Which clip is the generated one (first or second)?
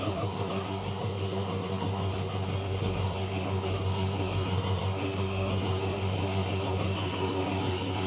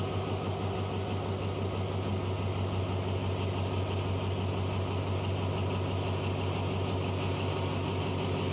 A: first